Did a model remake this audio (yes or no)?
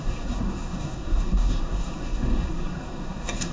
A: yes